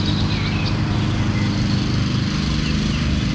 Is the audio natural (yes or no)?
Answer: yes